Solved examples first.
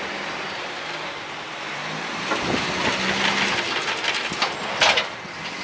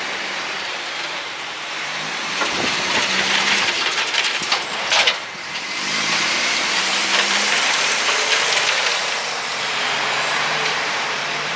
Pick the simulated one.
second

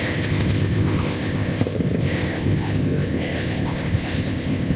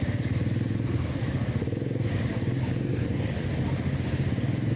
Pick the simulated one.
first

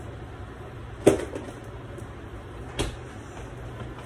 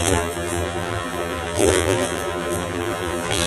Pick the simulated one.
second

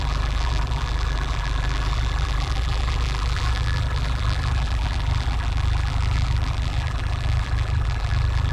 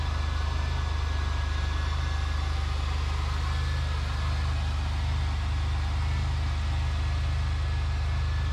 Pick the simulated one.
first